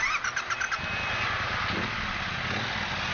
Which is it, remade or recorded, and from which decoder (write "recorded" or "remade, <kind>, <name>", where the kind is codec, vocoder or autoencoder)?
recorded